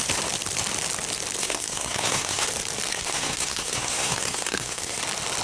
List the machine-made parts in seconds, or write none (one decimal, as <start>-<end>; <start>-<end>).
1.4-2.5; 2.9-5.0